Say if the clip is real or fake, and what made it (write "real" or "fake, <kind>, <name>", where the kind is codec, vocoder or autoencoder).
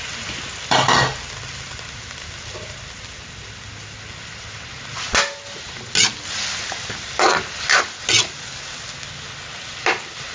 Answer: real